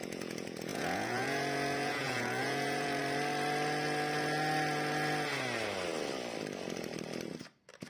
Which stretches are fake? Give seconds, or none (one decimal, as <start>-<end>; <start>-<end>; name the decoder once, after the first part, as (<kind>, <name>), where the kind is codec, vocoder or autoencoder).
0.0-3.0 (vocoder, Vocos)